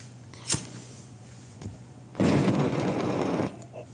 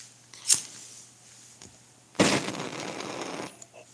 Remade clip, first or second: first